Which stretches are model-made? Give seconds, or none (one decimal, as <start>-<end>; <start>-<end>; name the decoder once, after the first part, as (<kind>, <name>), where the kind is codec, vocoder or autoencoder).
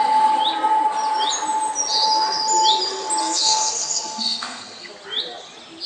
3.2-4.9 (codec, SNAC)